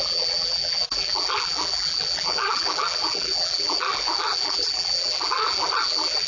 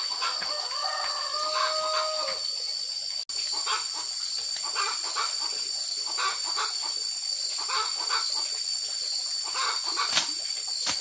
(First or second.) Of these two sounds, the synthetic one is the first